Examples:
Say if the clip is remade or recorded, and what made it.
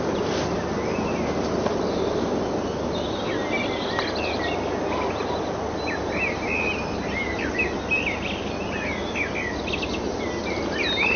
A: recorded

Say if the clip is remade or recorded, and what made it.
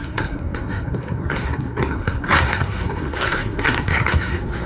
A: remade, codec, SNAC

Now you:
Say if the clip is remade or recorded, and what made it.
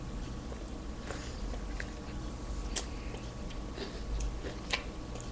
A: recorded